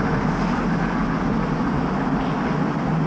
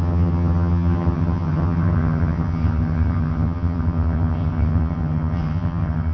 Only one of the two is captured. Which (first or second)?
first